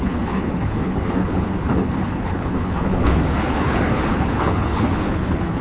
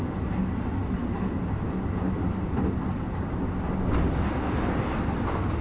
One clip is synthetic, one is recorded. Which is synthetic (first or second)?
first